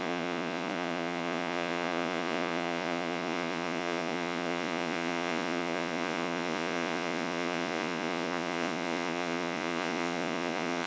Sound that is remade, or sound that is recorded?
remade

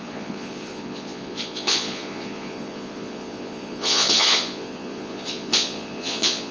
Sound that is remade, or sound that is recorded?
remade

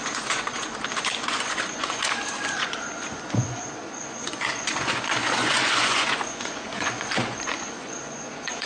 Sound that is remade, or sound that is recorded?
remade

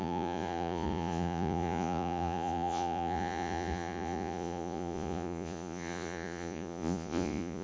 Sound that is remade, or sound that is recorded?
remade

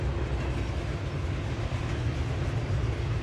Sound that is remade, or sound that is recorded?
recorded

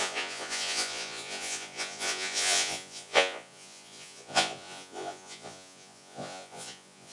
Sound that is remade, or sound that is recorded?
remade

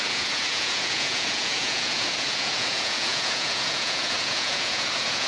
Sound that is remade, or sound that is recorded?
remade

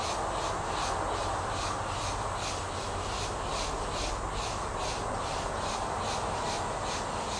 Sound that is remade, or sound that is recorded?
recorded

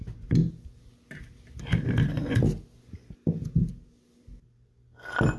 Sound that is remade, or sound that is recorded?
recorded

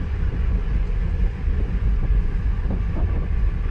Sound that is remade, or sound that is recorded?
remade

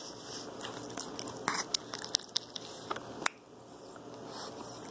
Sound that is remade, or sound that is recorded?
recorded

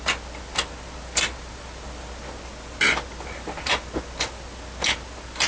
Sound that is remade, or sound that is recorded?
recorded